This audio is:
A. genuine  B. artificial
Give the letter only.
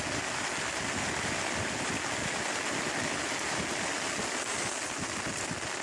A